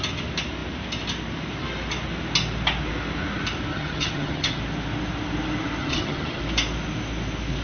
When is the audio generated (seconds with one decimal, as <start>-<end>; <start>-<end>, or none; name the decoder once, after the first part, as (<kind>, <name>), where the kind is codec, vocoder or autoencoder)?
3.7-4.6 (vocoder, HiFi-GAN); 5.8-6.4